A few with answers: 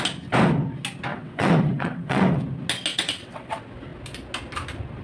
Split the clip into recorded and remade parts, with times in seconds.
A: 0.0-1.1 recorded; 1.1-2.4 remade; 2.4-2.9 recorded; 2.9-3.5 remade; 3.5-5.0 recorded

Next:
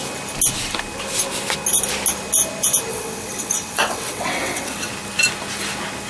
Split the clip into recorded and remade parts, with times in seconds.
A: 0.0-2.9 recorded; 2.9-4.9 remade; 4.9-6.1 recorded

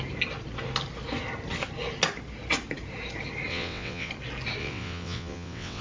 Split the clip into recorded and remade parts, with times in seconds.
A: 0.0-3.5 recorded; 3.5-4.1 remade; 4.1-4.6 recorded; 4.6-5.8 remade

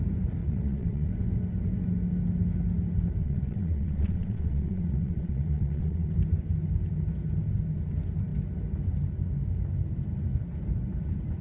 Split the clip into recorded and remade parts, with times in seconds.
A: 0.0-0.4 recorded; 0.4-1.1 remade; 1.1-3.2 recorded; 3.2-6.1 remade; 6.1-11.4 recorded

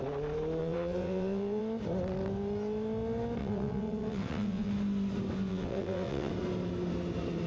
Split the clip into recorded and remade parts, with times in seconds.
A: 0.0-0.6 recorded; 0.6-1.6 remade; 1.6-3.4 recorded; 3.4-4.7 remade; 4.7-5.5 recorded; 5.5-6.3 remade; 6.3-7.5 recorded

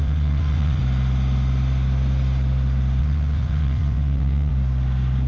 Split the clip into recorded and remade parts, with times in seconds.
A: 0.0-0.8 remade; 0.8-3.0 recorded; 3.0-4.5 remade; 4.5-5.3 recorded